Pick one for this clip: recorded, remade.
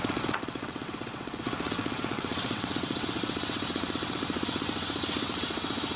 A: remade